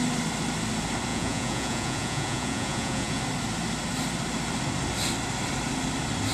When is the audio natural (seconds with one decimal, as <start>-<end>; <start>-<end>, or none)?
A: 0.0-1.1; 3.2-6.3